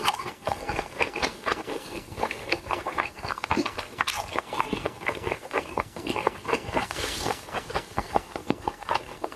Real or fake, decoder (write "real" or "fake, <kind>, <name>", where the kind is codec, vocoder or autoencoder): fake, codec, SNAC